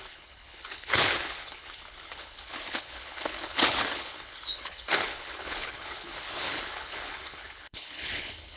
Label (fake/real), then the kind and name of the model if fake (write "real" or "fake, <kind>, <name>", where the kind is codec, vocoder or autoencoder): fake, codec, HILCodec